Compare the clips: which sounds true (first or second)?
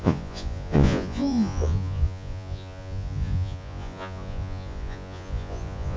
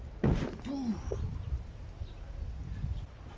second